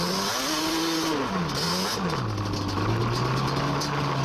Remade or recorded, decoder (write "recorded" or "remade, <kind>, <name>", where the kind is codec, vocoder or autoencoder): recorded